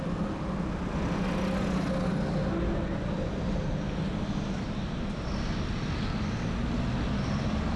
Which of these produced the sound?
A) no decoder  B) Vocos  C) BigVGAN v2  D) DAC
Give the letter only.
A